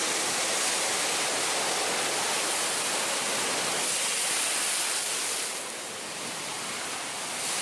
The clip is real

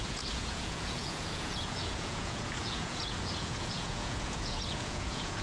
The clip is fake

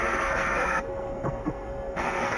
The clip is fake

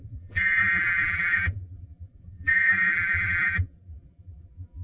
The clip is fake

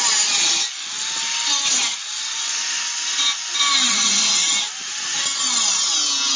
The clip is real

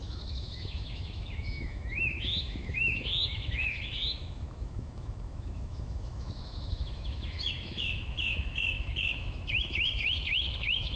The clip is fake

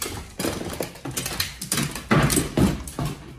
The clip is real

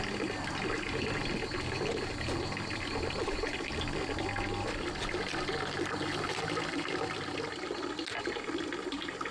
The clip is real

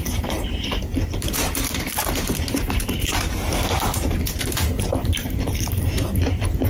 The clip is fake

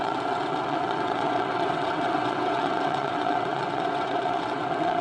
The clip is fake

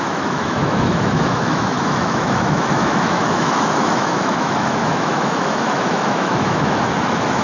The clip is fake